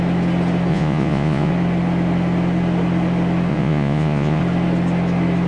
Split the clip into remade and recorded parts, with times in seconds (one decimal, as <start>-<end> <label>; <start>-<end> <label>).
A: 0.0-0.7 recorded; 0.7-1.5 remade; 1.5-3.5 recorded; 3.5-4.4 remade; 4.4-5.5 recorded